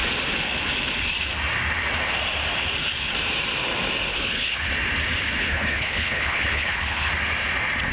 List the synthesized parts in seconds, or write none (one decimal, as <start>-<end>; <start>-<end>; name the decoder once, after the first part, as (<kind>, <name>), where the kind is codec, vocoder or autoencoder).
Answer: 4.1-4.7 (codec, HILCodec); 5.4-7.1